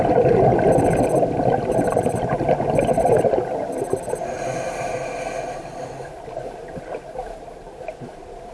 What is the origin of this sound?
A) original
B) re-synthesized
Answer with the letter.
A